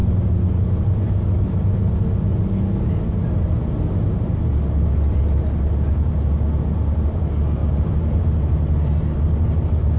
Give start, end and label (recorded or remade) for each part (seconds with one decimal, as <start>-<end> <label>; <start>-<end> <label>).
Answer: 0.0-7.6 recorded; 7.6-8.2 remade; 8.2-10.0 recorded